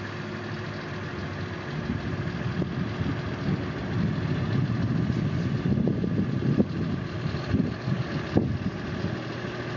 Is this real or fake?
real